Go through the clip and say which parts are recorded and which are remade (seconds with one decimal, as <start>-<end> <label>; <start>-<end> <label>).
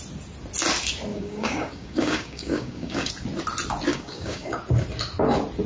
0.0-1.1 recorded; 1.1-3.1 remade; 3.1-3.9 recorded; 3.9-4.6 remade; 4.6-5.7 recorded